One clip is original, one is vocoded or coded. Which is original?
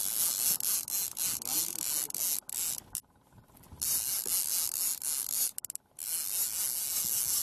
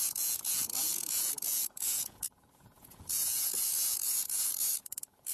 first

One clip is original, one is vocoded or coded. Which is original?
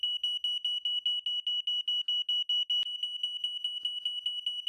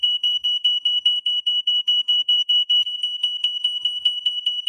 first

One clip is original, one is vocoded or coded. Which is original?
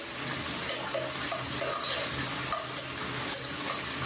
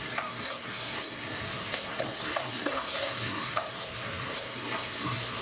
first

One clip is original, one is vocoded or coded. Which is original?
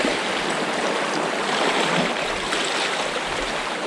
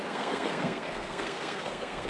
first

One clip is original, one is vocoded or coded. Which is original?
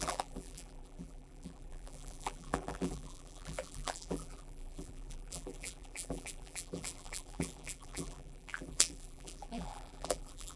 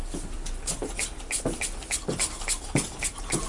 second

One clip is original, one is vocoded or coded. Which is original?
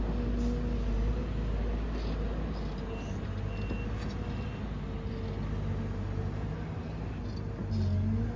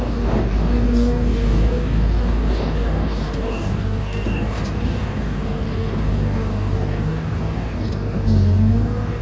first